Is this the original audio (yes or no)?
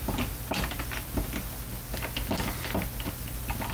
no